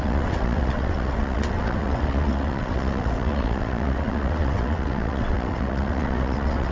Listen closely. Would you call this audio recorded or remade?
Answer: remade